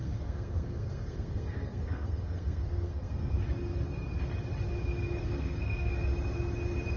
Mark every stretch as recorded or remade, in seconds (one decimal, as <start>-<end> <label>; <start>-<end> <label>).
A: 0.0-3.3 remade; 3.3-5.2 recorded; 5.2-5.9 remade; 5.9-7.0 recorded